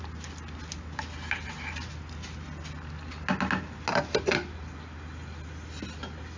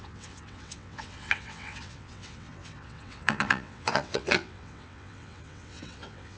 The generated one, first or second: second